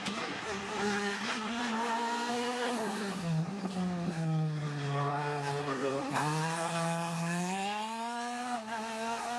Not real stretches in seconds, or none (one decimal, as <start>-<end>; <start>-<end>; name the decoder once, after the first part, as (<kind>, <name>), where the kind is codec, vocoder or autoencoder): 0.0-1.6 (codec, SNAC); 2.3-9.4